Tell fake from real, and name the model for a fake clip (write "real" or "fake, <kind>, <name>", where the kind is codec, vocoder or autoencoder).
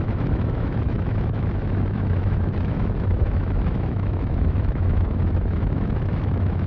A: fake, autoencoder, DAC-VAE